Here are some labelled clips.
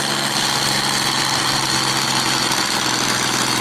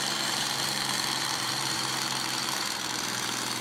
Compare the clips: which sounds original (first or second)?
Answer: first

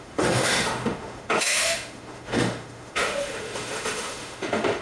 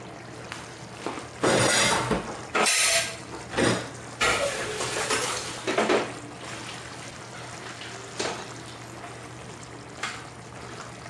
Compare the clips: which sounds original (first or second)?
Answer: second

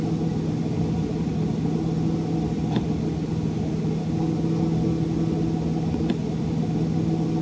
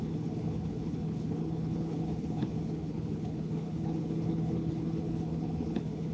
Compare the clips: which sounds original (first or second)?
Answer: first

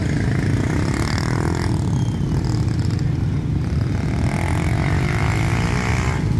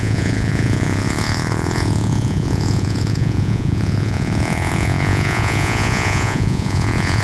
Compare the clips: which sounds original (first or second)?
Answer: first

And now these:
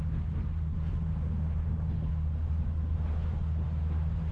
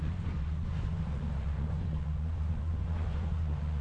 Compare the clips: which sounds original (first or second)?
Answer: first